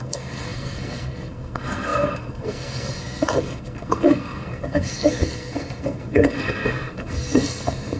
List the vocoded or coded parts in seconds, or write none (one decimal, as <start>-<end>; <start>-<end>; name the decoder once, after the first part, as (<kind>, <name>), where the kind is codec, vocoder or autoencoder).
0.0-8.0 (codec, SNAC)